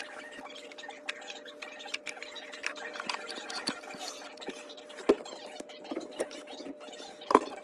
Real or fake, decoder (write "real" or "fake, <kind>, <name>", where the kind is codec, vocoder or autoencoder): fake, vocoder, BigVGAN v2